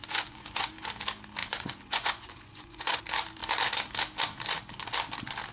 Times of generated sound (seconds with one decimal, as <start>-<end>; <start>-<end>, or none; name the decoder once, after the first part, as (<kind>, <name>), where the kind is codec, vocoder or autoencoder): 0.0-0.7 (vocoder, Vocos); 1.4-3.0